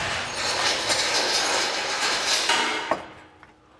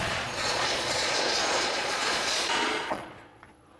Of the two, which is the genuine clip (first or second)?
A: first